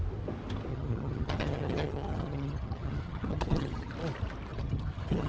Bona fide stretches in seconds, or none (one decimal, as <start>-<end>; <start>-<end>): 0.0-0.7; 3.9-4.5